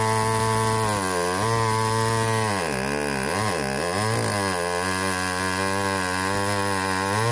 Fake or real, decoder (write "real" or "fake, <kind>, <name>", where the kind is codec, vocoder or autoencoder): real